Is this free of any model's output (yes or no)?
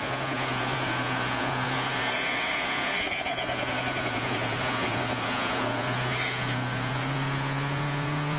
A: no